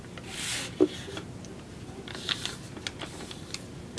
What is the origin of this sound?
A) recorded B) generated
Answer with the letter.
A